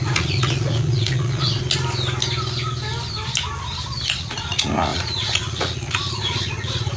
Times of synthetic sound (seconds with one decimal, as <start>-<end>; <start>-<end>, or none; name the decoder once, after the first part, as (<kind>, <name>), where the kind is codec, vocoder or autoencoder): 0.0-1.6 (vocoder, Vocos); 4.2-7.0